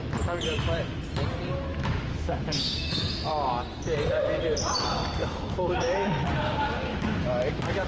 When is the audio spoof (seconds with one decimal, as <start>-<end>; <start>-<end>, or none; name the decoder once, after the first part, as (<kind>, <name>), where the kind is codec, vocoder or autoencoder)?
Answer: 1.7-3.3 (autoencoder, DAC-VAE); 5.2-6.1; 6.9-7.5